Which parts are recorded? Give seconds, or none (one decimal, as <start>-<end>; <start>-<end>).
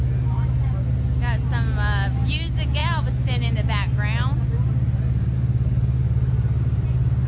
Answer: 0.0-7.3